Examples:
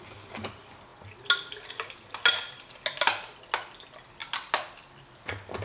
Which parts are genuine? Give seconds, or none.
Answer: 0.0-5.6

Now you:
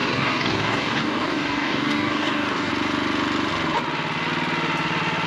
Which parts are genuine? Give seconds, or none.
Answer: 2.7-5.3

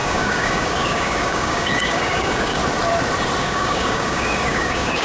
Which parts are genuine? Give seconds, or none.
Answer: 2.6-3.4